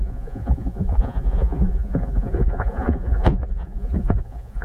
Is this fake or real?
fake